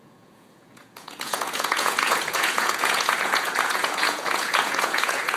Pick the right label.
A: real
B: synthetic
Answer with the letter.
B